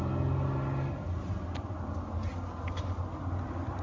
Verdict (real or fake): real